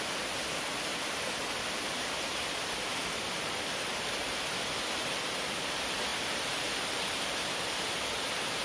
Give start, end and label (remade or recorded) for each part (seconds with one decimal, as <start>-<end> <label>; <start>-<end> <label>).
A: 0.0-0.9 recorded; 0.9-4.4 remade; 4.4-6.1 recorded; 6.1-7.9 remade; 7.9-8.6 recorded